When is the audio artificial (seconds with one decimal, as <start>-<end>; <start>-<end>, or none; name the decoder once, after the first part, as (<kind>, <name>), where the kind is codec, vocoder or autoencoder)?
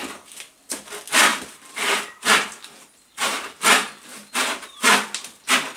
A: 1.3-4.8 (vocoder, BigVGAN v2)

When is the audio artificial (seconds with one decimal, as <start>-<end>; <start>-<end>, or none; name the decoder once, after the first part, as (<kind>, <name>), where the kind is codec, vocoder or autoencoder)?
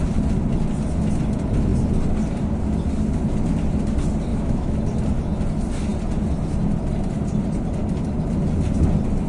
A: 4.3-4.8 (autoencoder, DAC-VAE)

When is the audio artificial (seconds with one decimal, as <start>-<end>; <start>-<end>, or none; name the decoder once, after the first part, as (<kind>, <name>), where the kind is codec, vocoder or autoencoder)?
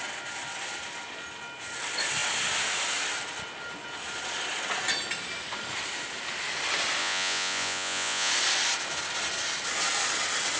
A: 7.0-8.3 (vocoder, Vocos)